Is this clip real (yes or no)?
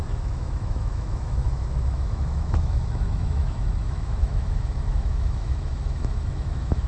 no